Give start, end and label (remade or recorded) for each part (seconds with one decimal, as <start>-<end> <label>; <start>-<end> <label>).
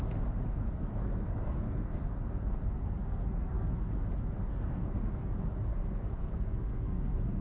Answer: 0.0-0.4 recorded; 0.4-3.9 remade; 3.9-4.5 recorded; 4.5-5.3 remade; 5.3-5.7 recorded; 5.7-7.4 remade